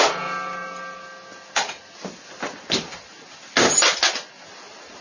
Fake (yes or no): no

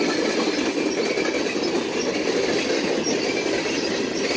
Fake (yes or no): no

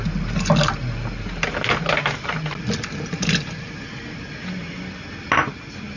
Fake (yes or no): no